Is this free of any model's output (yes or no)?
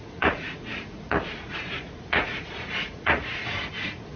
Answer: no